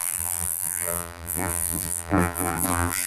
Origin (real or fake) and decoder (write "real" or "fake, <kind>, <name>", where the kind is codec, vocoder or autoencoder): fake, vocoder, BigVGAN v2